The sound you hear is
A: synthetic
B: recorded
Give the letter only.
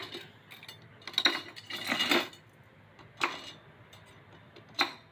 B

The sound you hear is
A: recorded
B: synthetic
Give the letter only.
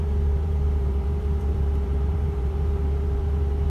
B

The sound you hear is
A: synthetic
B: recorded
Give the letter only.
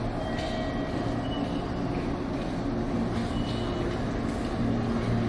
B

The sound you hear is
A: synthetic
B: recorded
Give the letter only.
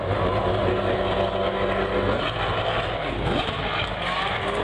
B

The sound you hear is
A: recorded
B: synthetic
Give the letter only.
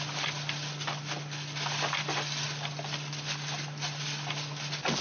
A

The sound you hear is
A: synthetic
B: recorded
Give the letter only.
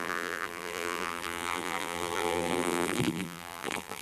A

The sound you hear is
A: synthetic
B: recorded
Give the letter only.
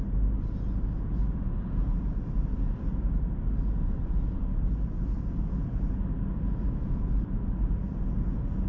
B